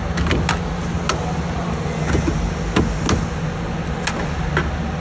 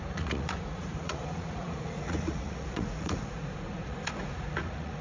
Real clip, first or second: first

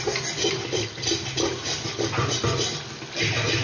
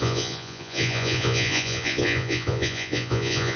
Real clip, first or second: first